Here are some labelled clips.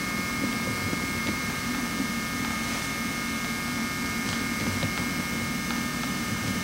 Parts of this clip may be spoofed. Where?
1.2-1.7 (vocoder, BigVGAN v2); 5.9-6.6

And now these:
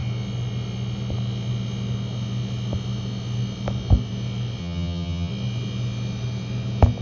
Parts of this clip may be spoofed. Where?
4.6-5.3 (vocoder, HiFi-GAN)

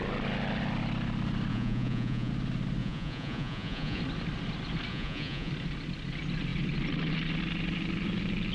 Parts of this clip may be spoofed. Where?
1.5-2.3 (vocoder, Vocos); 2.8-4.0; 4.9-5.5

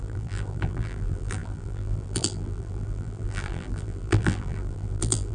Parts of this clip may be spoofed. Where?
0.0-5.3 (vocoder, BigVGAN v2)

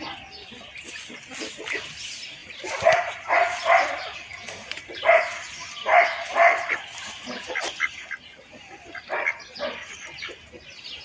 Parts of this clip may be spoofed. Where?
2.4-3.0 (vocoder, BigVGAN v2); 5.9-6.8

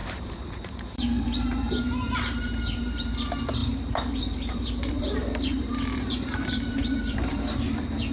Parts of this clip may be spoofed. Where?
0.0-3.1 (vocoder, BigVGAN v2); 3.6-7.4

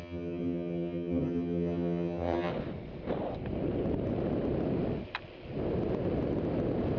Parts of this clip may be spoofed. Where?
0.0-2.5 (vocoder, HiFi-GAN)

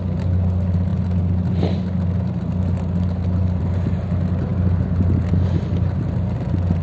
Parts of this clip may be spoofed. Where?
none